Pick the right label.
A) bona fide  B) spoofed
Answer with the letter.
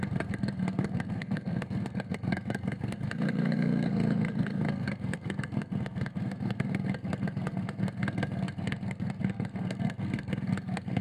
B